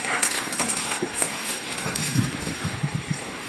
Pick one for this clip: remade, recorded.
remade